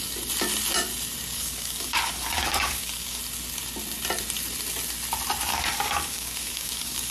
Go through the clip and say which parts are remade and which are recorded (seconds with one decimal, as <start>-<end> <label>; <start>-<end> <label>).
0.0-1.3 recorded; 1.3-3.2 remade; 3.2-5.5 recorded; 5.5-7.1 remade